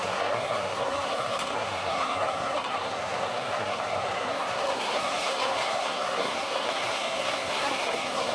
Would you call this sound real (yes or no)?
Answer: no